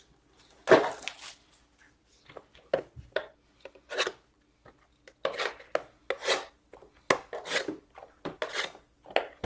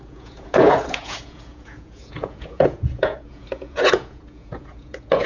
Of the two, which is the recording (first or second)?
first